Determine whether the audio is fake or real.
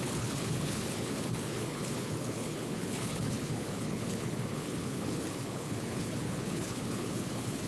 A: fake